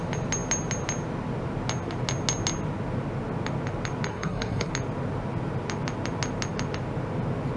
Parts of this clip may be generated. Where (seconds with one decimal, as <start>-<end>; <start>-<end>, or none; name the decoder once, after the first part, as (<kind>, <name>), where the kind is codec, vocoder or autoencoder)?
4.1-4.7 (codec, SNAC)